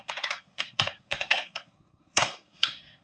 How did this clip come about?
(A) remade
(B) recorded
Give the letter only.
A